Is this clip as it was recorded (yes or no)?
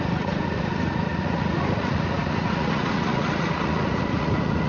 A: no